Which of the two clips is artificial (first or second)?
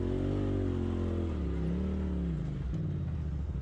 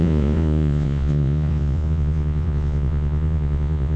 second